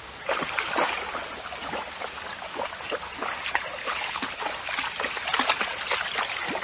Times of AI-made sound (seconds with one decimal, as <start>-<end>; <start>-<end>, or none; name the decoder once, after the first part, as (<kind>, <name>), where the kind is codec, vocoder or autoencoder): 3.8-4.4 (codec, HILCodec)